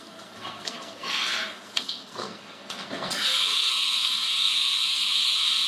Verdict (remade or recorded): remade